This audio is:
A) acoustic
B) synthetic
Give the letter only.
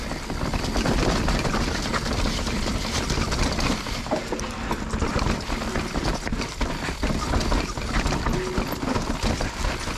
A